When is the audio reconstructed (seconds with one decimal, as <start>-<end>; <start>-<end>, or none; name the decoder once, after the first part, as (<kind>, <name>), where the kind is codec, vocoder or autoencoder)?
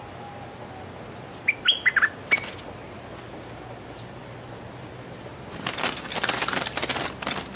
none